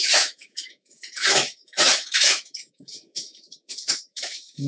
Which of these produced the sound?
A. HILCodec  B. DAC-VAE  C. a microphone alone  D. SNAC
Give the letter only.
B